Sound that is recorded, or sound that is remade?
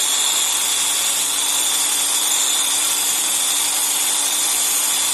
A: recorded